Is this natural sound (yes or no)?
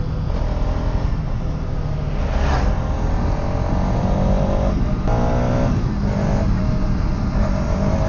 yes